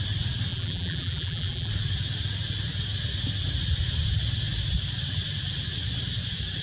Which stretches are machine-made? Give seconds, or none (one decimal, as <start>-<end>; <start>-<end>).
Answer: 0.5-1.7